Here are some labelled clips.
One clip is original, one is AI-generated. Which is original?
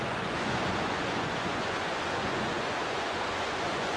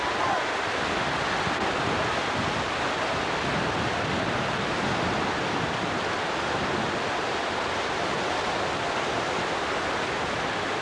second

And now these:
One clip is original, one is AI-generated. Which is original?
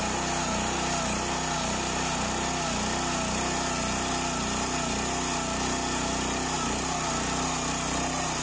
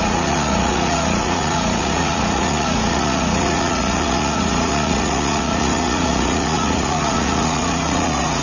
first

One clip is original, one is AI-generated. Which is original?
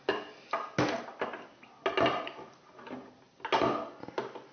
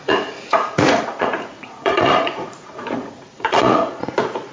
first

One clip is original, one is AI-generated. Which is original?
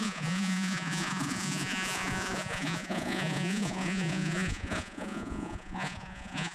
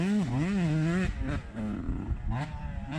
second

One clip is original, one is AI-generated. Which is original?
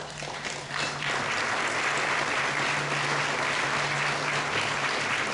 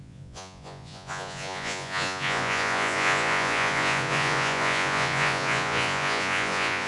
first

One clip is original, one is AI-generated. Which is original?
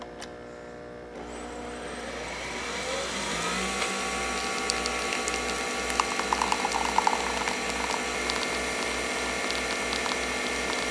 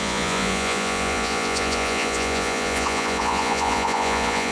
first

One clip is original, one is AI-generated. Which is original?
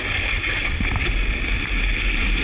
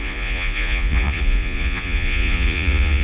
first